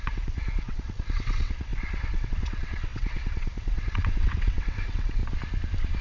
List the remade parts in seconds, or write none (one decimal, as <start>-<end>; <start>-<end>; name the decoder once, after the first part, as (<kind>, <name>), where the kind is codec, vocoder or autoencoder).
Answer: 0.0-5.2 (vocoder, WaveNeXt)